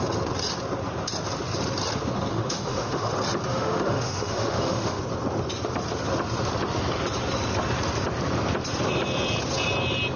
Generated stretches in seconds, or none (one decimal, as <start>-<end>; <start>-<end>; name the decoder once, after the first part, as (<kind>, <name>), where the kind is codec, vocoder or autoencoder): 2.3-3.1 (autoencoder, DAC-VAE); 3.5-5.0